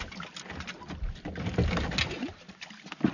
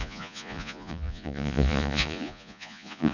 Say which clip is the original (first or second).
first